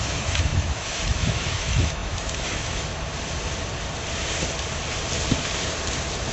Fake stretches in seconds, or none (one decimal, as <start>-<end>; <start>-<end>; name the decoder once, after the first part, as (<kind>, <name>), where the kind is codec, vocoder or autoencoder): 0.0-2.9 (autoencoder, DAC-VAE)